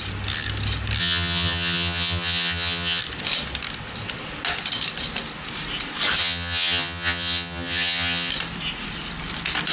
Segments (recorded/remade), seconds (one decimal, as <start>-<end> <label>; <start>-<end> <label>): 0.0-1.0 recorded; 1.0-3.0 remade; 3.0-6.2 recorded; 6.2-8.3 remade; 8.3-9.7 recorded